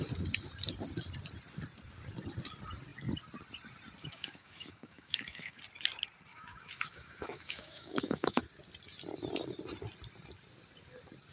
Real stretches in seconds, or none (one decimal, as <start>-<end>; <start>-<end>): 0.0-4.0; 5.6-6.3; 8.4-11.3

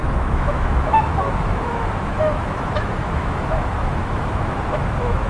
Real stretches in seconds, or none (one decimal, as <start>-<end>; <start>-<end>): none

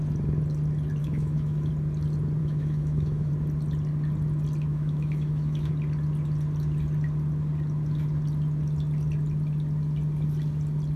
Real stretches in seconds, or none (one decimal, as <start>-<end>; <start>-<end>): 0.0-1.0; 1.7-2.4; 3.3-4.7; 5.7-11.0

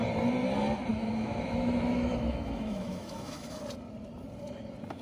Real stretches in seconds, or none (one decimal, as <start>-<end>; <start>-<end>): 0.0-0.9; 3.6-5.0

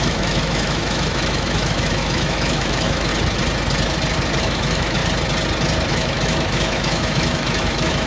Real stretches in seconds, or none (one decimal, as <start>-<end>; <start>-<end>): 3.1-4.4; 5.0-5.9